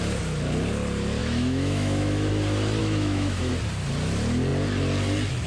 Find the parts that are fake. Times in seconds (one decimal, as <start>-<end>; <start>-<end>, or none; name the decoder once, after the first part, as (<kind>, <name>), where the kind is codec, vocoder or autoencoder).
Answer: 1.2-2.3 (autoencoder, DAC-VAE); 2.8-3.5